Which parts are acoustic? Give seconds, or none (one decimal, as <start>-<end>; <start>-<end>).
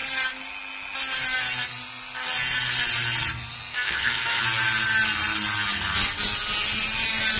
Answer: 0.0-3.7; 4.4-7.4